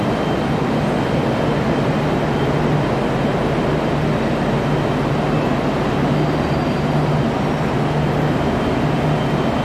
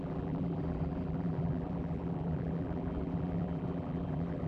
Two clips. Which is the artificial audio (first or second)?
second